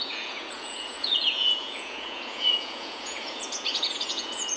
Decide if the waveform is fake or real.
fake